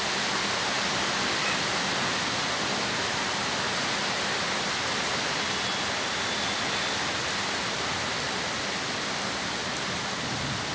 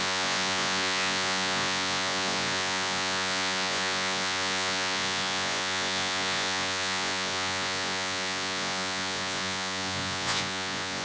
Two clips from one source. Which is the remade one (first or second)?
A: second